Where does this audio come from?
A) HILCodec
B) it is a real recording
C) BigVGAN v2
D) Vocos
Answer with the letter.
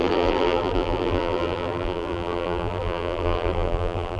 C